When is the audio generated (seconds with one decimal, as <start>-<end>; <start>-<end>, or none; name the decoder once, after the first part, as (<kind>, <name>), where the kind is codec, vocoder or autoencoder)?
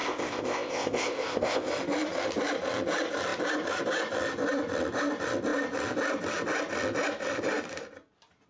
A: 0.0-1.7 (codec, ZipCodec)